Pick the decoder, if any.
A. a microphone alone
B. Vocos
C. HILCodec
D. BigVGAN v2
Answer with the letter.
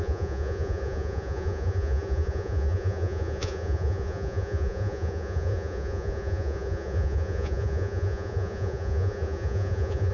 B